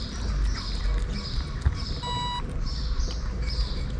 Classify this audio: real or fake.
real